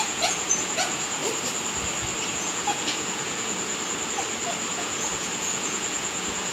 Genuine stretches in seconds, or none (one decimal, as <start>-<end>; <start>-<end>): 1.2-2.3; 3.7-4.7